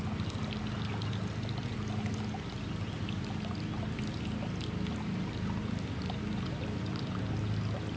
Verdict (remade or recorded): recorded